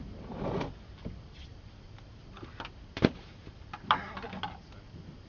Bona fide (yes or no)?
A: yes